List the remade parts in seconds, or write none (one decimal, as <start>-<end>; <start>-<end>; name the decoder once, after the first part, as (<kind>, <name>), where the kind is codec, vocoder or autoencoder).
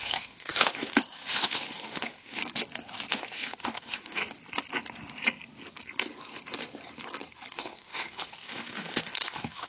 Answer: 0.0-2.4 (autoencoder, DAC-VAE); 3.1-4.2; 7.5-9.7